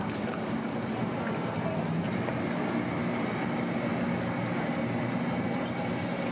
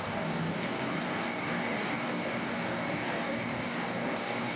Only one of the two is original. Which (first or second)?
first